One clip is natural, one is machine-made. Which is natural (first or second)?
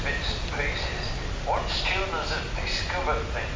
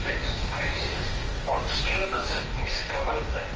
first